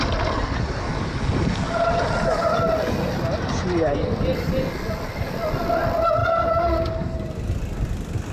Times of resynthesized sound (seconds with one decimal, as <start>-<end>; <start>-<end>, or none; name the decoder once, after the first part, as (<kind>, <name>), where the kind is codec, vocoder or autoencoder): none